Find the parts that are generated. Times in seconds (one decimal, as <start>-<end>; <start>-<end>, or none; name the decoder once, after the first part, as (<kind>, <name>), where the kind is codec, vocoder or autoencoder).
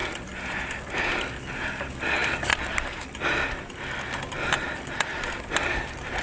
5.1-5.8 (vocoder, BigVGAN v2)